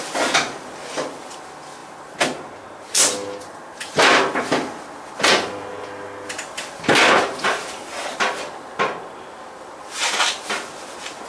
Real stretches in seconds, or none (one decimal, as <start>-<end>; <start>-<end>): 0.0-11.3